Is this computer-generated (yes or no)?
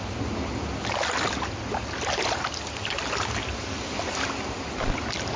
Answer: no